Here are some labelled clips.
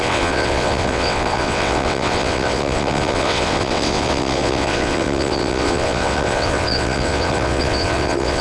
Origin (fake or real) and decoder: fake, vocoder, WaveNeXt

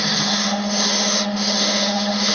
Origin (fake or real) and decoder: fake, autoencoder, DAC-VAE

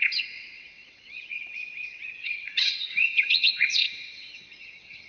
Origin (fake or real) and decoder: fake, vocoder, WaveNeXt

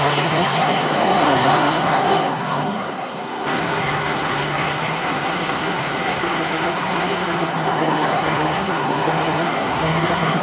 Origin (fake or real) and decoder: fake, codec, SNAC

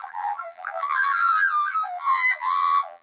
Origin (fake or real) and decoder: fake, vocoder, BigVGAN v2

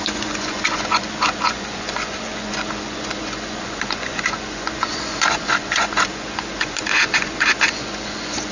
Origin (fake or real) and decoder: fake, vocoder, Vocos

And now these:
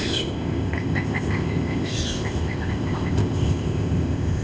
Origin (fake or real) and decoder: fake, codec, ZipCodec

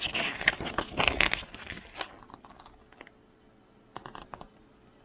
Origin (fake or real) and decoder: real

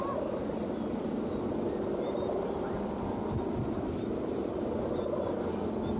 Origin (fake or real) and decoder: real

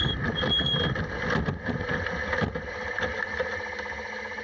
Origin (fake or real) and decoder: real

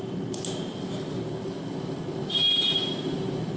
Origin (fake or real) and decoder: real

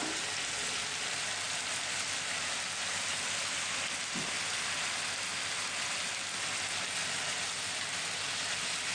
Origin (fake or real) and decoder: real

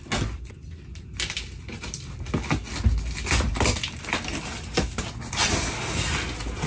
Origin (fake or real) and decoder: real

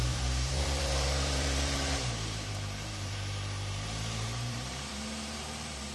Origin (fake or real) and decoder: fake, vocoder, BigVGAN v2